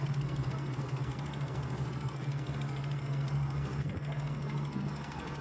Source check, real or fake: fake